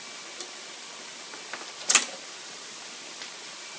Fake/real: real